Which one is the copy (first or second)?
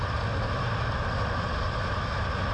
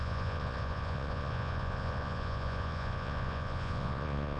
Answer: second